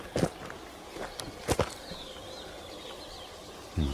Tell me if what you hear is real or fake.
real